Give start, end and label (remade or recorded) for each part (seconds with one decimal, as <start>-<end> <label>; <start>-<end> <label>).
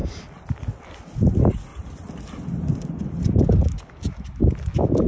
0.0-1.7 recorded; 1.7-3.6 remade; 3.6-5.1 recorded